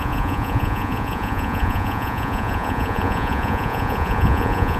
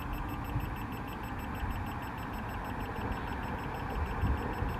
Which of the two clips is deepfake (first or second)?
first